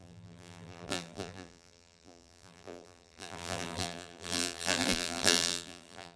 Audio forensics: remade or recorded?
remade